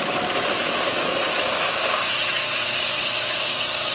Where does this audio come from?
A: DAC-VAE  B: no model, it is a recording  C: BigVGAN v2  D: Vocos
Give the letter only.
A